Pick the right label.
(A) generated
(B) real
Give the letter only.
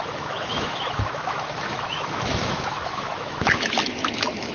A